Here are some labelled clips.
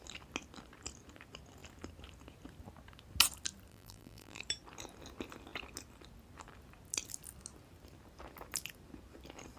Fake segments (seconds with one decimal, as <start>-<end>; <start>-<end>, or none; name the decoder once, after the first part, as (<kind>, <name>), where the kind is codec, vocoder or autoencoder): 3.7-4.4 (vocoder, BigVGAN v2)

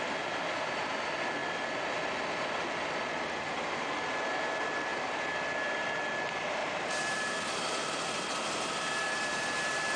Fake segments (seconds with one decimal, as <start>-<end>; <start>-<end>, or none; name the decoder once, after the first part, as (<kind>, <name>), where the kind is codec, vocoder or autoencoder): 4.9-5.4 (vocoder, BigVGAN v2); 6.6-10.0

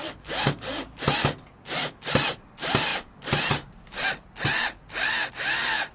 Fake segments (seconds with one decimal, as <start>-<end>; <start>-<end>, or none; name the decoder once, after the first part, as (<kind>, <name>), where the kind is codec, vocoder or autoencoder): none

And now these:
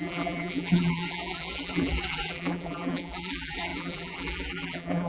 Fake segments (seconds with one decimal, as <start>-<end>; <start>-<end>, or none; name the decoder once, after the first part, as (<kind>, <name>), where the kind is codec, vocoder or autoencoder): 0.0-5.1 (vocoder, BigVGAN v2)